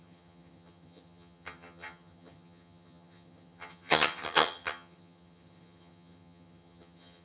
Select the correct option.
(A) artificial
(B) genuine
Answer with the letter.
A